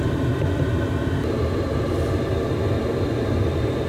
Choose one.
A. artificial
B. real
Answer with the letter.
B